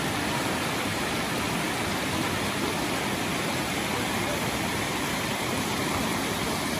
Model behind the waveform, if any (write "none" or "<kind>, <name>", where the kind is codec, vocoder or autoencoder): none